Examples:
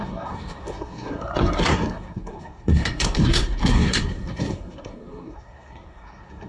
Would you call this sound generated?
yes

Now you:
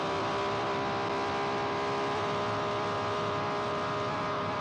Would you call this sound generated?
no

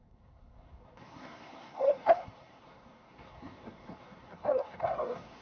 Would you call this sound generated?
yes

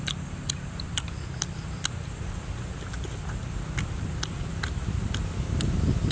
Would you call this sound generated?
no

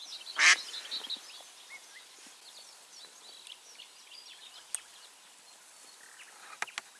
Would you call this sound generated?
no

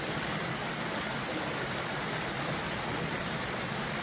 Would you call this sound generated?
no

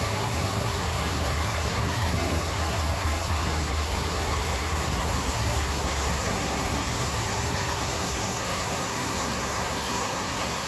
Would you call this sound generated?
yes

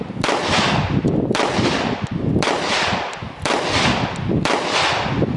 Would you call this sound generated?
no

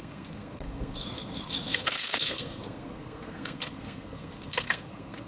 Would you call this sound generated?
yes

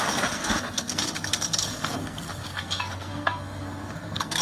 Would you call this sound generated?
yes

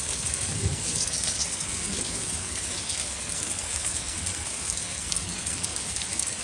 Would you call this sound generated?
yes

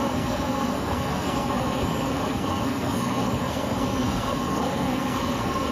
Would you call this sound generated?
yes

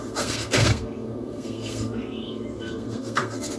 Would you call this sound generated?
yes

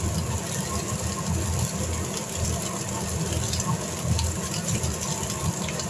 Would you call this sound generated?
no